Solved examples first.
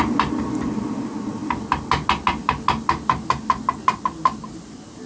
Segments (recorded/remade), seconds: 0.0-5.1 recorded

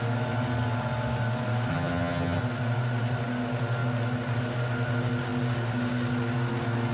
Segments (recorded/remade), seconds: 0.0-1.7 recorded; 1.7-2.4 remade; 2.4-6.9 recorded

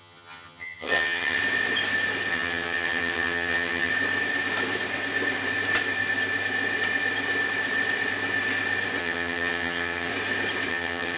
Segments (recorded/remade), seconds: 0.0-1.4 remade; 1.4-2.3 recorded; 2.3-3.9 remade; 3.9-9.0 recorded; 9.0-10.1 remade; 10.1-10.7 recorded; 10.7-11.2 remade

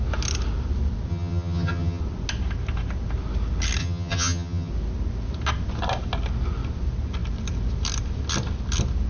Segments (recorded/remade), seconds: 0.0-1.1 recorded; 1.1-2.0 remade; 2.0-3.8 recorded; 3.8-4.7 remade; 4.7-9.1 recorded

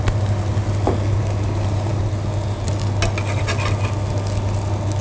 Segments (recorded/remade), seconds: 0.0-5.0 recorded

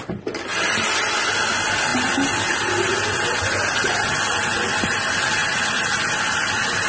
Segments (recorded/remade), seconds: 0.0-6.9 recorded